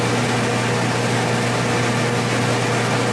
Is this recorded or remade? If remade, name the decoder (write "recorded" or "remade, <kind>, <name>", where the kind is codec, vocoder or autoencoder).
recorded